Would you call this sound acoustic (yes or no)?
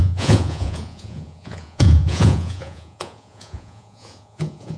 no